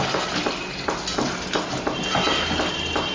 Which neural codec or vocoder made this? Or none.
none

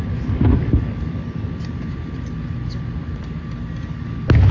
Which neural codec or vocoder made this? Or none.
none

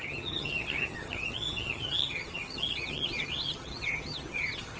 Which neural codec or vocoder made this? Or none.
vocoder, HiFi-GAN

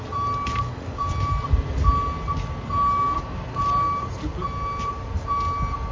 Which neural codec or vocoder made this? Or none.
none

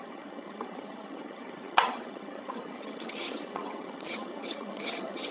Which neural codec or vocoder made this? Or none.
vocoder, HiFi-GAN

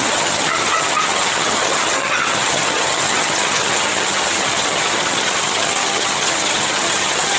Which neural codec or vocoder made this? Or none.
vocoder, HiFi-GAN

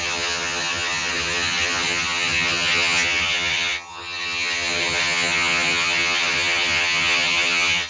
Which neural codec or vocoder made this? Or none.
vocoder, HiFi-GAN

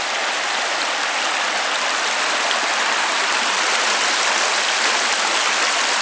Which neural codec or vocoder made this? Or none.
none